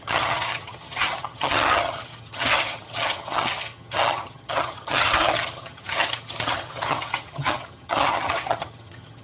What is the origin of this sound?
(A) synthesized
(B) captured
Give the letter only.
A